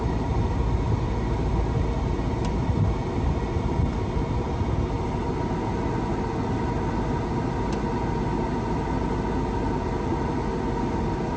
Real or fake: real